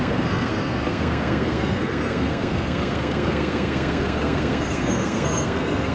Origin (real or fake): fake